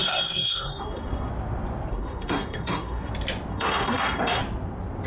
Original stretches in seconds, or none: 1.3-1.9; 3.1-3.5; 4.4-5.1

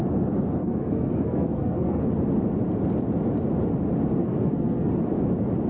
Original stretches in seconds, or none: 0.0-0.6; 2.0-4.2; 4.9-5.7

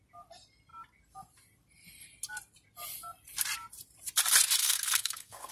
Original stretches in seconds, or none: 0.0-4.6